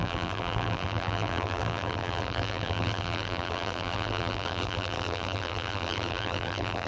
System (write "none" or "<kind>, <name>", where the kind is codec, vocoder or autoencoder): vocoder, BigVGAN v2